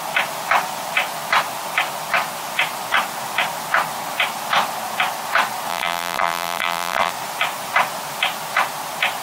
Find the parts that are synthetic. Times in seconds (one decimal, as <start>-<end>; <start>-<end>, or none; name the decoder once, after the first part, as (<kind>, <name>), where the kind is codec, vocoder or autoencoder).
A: 5.7-7.1 (vocoder, BigVGAN v2)